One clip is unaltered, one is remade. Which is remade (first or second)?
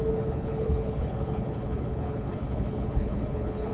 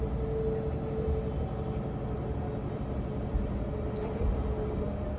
first